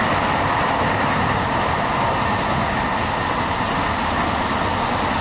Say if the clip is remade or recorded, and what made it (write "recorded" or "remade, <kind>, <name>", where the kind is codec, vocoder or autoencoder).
recorded